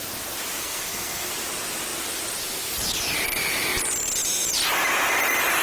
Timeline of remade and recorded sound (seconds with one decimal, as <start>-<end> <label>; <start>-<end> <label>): 0.0-0.6 recorded; 0.6-1.3 remade; 1.3-5.6 recorded